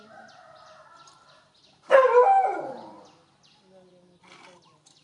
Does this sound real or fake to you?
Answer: real